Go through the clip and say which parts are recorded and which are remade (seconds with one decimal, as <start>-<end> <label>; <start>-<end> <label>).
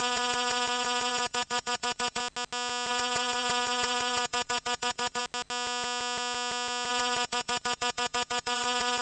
0.0-2.2 remade; 2.2-2.9 recorded; 2.9-5.2 remade; 5.2-6.9 recorded; 6.9-9.0 remade